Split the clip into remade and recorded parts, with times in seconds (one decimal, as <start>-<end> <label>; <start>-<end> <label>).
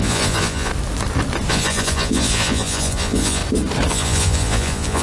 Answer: 0.0-0.7 remade; 0.7-1.5 recorded; 1.5-3.4 remade; 3.4-3.9 recorded; 3.9-5.0 remade